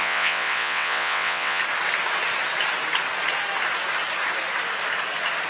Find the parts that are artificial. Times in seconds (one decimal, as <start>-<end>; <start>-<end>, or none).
0.0-1.6